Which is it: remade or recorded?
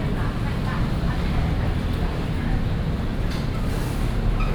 recorded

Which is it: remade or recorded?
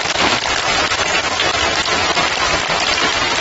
recorded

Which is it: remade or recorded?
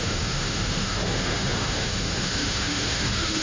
remade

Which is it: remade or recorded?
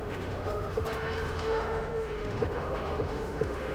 remade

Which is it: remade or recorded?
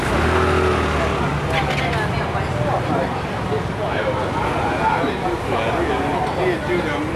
recorded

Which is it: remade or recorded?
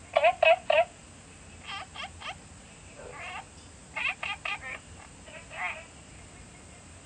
recorded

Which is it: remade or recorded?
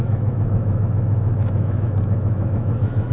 remade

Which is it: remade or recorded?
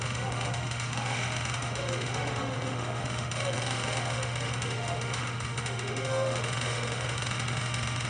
remade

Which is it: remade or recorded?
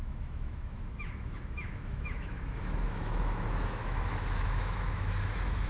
remade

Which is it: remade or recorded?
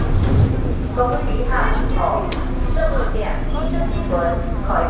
recorded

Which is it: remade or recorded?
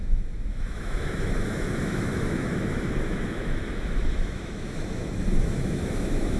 remade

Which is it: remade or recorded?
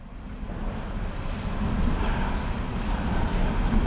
recorded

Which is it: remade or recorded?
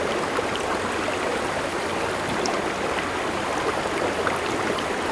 recorded